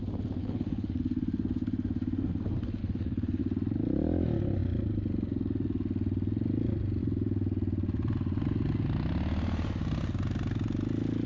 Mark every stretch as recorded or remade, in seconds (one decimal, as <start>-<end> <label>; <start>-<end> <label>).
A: 0.0-0.4 recorded; 0.4-1.0 remade; 1.0-2.8 recorded; 2.8-3.4 remade; 3.4-11.3 recorded